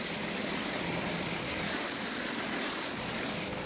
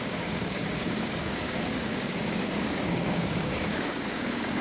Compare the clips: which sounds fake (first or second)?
second